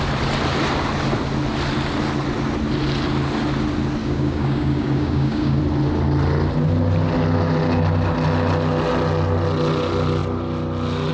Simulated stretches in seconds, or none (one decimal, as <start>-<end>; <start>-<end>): 4.0-5.6